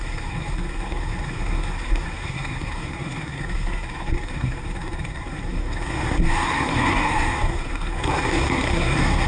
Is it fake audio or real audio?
fake